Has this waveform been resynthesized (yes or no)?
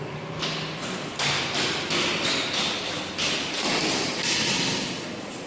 no